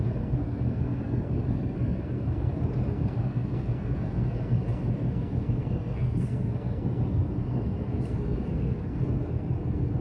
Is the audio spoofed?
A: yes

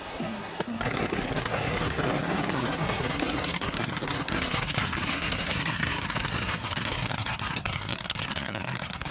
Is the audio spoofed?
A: yes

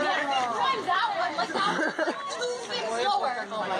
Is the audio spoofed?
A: no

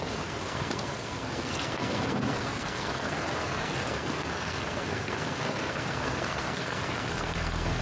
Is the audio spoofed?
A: yes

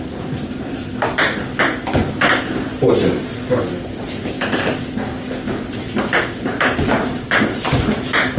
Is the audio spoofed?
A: no